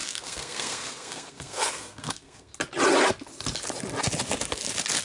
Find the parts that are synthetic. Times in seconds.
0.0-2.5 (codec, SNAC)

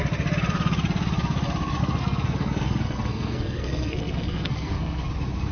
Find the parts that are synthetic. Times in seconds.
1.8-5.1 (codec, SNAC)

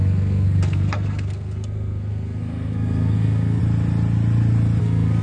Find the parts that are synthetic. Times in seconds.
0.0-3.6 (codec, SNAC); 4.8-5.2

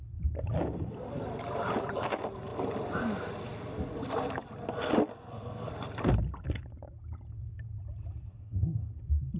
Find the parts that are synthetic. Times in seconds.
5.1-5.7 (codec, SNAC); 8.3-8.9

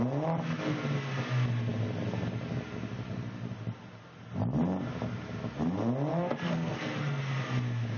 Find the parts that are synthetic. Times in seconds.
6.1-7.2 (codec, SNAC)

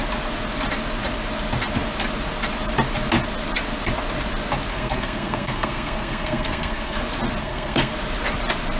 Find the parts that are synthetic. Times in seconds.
4.7-7.0 (codec, SNAC); 7.4-7.9

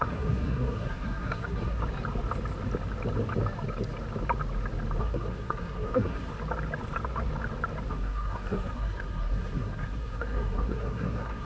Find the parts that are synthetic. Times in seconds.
0.0-1.8 (codec, SNAC); 5.0-6.3; 7.9-11.5